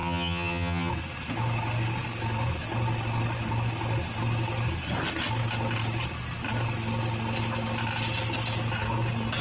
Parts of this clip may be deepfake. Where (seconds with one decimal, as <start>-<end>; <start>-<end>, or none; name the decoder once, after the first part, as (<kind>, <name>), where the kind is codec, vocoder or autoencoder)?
0.0-0.9 (vocoder, HiFi-GAN)